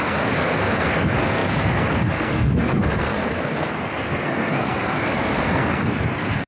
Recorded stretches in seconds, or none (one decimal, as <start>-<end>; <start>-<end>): none